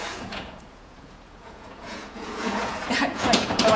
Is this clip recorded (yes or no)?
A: no